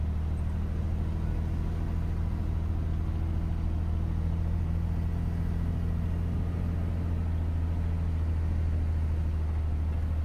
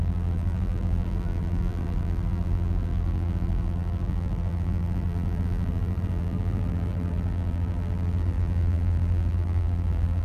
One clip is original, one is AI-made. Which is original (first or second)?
first